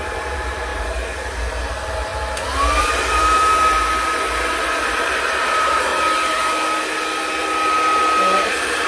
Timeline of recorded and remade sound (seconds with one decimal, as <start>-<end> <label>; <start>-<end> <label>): 0.0-2.1 remade; 2.1-2.8 recorded; 2.8-5.9 remade; 5.9-8.2 recorded; 8.2-8.9 remade